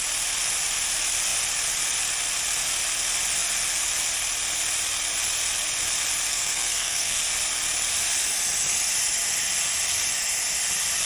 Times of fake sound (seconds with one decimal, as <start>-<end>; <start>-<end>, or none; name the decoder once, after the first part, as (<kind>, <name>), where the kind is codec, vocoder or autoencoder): 6.3-7.2 (codec, SNAC)